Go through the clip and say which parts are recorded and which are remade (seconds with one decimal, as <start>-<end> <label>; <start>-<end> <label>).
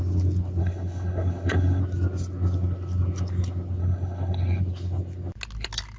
0.0-0.6 recorded; 0.6-1.8 remade; 1.8-3.8 recorded; 3.8-4.6 remade; 4.6-6.0 recorded